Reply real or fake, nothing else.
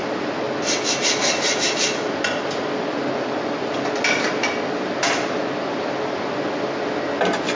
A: real